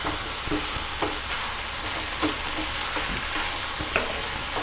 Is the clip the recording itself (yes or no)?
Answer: yes